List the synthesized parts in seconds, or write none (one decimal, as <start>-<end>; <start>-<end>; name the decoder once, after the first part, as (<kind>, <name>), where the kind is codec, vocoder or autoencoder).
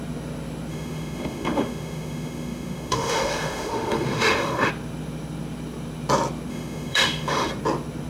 0.7-4.7 (autoencoder, DAC-VAE); 6.5-7.5